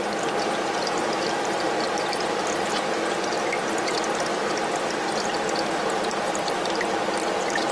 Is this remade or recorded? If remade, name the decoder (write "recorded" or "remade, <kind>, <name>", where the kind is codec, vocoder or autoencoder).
remade, vocoder, BigVGAN v2